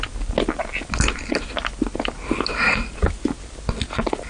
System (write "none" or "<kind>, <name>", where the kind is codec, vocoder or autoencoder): none